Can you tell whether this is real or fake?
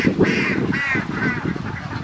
real